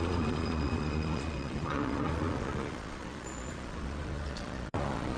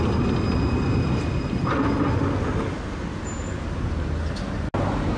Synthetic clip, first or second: first